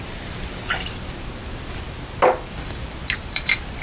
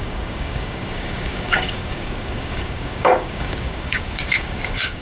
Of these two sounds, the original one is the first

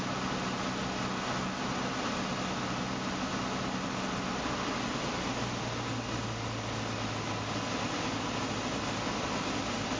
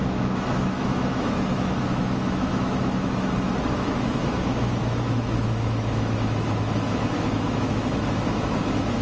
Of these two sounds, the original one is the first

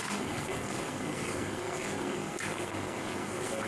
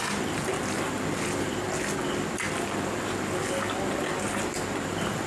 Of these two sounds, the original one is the second